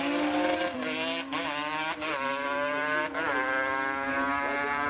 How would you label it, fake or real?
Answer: real